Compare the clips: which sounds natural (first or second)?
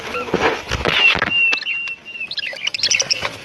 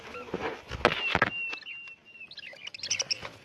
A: second